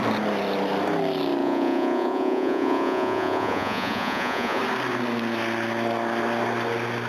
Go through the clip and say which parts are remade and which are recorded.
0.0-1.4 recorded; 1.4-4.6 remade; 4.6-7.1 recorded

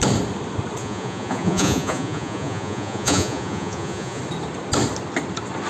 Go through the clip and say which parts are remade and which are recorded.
0.0-0.8 recorded; 0.8-4.2 remade; 4.2-5.7 recorded

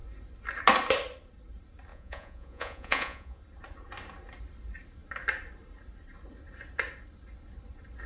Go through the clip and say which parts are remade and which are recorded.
0.0-1.9 recorded; 1.9-3.4 remade; 3.4-8.1 recorded